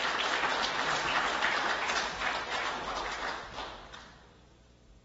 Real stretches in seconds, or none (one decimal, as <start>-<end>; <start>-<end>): 0.0-2.5; 3.3-5.0